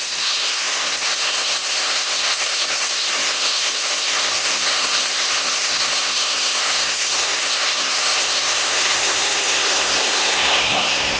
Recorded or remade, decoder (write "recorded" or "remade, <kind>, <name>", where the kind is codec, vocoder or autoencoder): remade, codec, SNAC